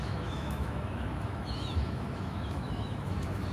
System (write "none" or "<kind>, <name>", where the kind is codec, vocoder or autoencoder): autoencoder, DAC-VAE